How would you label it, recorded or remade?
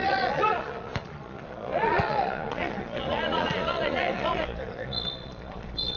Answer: remade